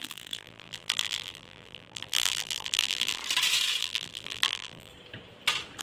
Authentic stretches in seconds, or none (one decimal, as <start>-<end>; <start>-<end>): 3.2-3.8; 4.9-5.8

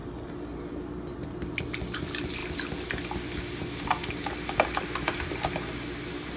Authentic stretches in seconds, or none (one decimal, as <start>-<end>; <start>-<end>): 0.0-6.4